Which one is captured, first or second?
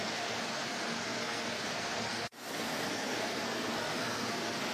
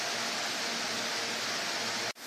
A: second